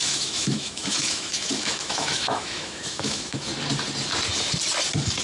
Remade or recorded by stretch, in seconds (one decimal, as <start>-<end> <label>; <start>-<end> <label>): 0.0-3.5 remade; 3.5-5.2 recorded